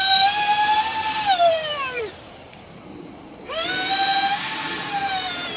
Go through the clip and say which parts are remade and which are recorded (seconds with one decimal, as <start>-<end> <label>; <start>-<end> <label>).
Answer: 0.0-0.9 recorded; 0.9-2.8 remade; 2.8-5.6 recorded